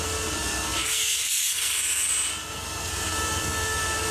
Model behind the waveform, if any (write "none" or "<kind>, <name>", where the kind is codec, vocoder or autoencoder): codec, SNAC